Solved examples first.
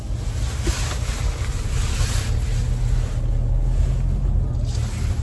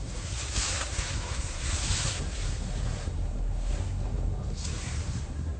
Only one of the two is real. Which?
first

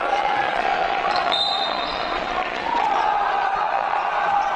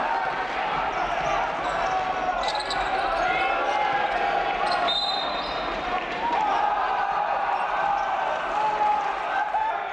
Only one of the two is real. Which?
second